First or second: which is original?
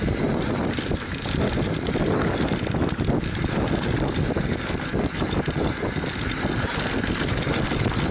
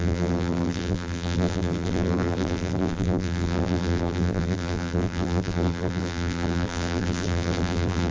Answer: first